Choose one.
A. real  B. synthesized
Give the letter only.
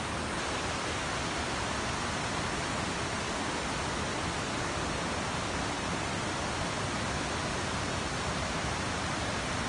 A